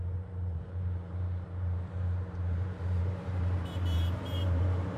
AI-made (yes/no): yes